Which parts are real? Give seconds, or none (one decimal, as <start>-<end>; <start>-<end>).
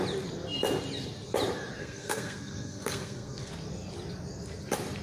0.0-1.8; 3.5-5.0